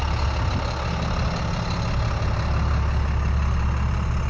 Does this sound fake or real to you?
real